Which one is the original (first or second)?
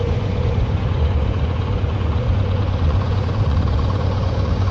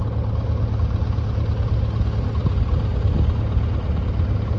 second